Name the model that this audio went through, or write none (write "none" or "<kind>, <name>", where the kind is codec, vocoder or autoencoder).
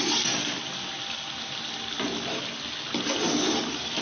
none